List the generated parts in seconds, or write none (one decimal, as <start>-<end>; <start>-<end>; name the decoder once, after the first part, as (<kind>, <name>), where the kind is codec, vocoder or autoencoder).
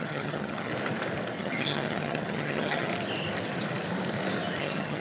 0.0-0.7 (vocoder, HiFi-GAN); 1.4-2.9; 4.6-5.0